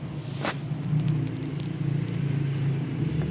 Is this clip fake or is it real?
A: real